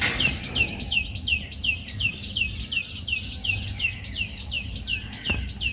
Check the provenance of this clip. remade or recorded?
recorded